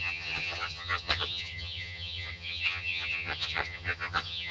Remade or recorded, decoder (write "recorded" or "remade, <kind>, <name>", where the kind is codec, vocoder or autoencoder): remade, vocoder, HiFi-GAN